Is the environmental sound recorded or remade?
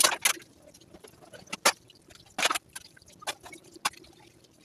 recorded